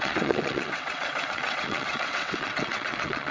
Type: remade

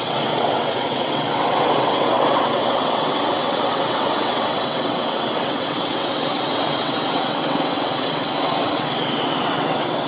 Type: remade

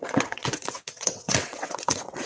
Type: remade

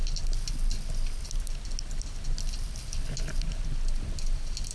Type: recorded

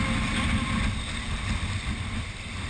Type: recorded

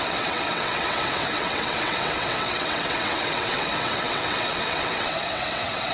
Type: remade